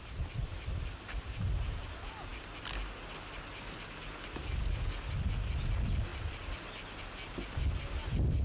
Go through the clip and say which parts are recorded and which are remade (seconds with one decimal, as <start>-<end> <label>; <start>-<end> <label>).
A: 0.0-8.4 recorded